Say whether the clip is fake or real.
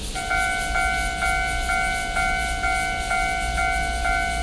real